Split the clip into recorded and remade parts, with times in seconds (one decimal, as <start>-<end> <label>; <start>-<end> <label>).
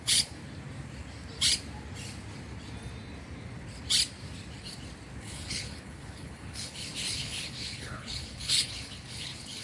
0.0-0.4 remade; 0.4-5.2 recorded; 5.2-9.6 remade